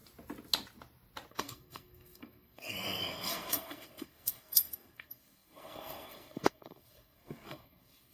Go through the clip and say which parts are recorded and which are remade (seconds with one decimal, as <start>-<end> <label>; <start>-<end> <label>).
0.0-1.3 recorded; 1.3-8.1 remade